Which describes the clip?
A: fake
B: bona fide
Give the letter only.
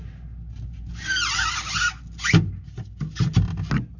B